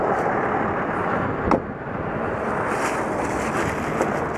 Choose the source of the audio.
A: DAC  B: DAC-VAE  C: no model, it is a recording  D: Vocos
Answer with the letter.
C